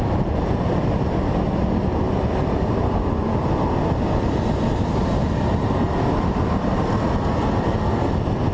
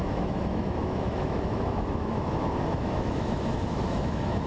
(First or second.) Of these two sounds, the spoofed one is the second